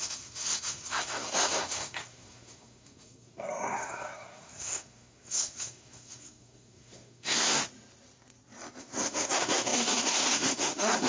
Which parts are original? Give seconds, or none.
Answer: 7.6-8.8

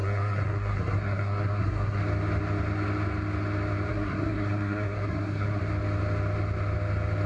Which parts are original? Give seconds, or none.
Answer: 2.0-3.9; 5.6-7.3

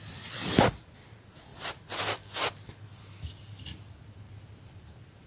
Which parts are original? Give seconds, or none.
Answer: 0.0-5.3